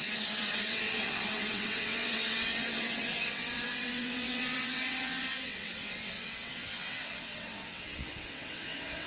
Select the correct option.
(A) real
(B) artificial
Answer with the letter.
B